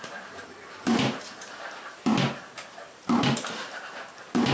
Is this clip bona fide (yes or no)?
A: no